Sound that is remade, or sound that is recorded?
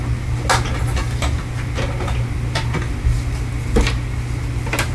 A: recorded